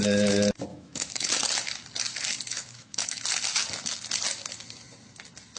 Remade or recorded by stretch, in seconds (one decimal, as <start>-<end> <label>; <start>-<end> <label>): 0.0-0.7 recorded; 0.7-1.3 remade; 1.3-2.5 recorded; 2.5-3.2 remade; 3.2-5.6 recorded